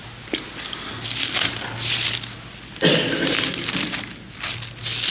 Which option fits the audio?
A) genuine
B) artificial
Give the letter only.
A